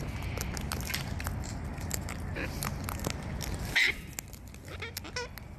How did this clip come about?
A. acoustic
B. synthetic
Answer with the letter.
A